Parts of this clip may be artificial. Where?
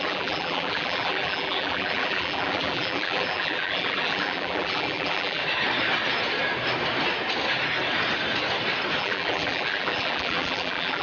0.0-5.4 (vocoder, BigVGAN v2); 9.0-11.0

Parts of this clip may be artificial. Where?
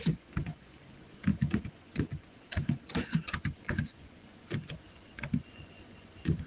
0.0-6.5 (vocoder, Vocos)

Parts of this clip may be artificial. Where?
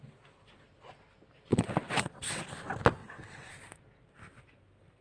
1.5-2.4 (vocoder, WaveNeXt); 3.0-3.5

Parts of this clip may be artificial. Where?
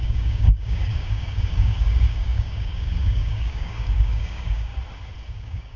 0.0-4.7 (codec, DAC); 5.3-5.8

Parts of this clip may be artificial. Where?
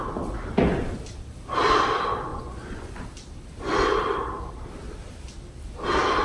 2.3-3.0 (vocoder, Vocos)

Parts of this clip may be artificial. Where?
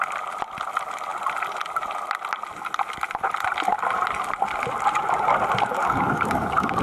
5.7-6.8 (codec, DAC)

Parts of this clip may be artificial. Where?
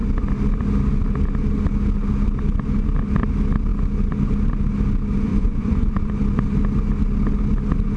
5.3-6.1 (vocoder, Vocos)